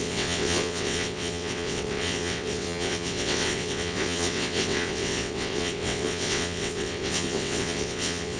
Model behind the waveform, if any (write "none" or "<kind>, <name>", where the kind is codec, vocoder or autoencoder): vocoder, WaveNeXt